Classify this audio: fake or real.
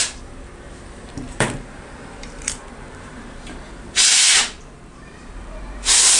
fake